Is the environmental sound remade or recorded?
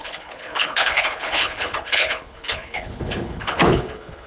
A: remade